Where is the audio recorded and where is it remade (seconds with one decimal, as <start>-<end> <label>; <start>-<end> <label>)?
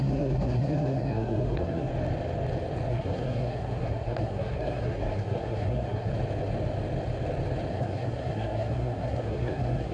0.0-1.9 remade; 1.9-2.9 recorded; 2.9-6.1 remade; 6.1-7.7 recorded; 7.7-9.9 remade